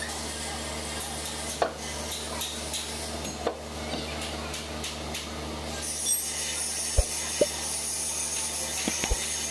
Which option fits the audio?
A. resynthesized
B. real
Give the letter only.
B